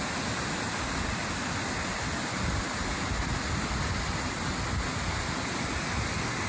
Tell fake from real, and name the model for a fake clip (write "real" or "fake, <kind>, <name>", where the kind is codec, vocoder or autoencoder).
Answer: real